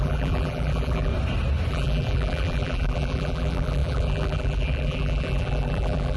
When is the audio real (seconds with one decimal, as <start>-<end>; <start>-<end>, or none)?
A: 1.1-1.7